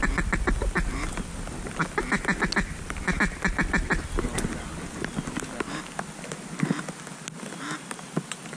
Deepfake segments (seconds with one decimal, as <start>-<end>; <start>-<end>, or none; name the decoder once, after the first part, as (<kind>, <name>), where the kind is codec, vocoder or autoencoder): none